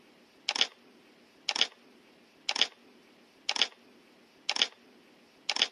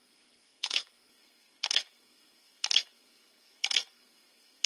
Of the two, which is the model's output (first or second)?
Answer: second